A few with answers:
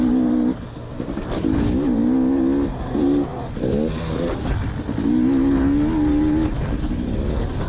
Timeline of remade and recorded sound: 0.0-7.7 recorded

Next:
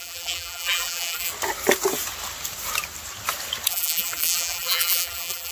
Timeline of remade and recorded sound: 0.0-1.3 remade; 1.3-3.7 recorded; 3.7-5.5 remade

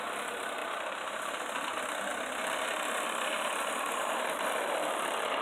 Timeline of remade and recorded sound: 0.0-0.6 recorded; 0.6-1.3 remade; 1.3-5.4 recorded